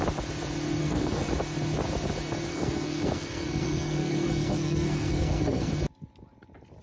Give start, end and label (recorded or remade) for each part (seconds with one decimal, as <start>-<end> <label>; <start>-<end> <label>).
0.0-0.8 recorded; 0.8-1.3 remade; 1.3-2.5 recorded; 2.5-5.7 remade; 5.7-6.8 recorded